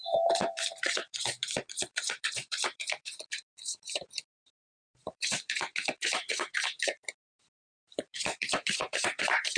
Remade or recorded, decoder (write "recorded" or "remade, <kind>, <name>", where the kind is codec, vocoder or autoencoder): remade, vocoder, BigVGAN v2